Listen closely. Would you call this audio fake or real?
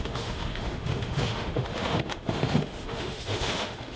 fake